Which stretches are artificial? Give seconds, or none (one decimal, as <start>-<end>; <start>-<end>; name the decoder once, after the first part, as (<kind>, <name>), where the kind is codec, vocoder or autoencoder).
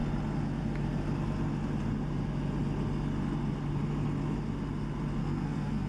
5.2-5.9 (codec, SNAC)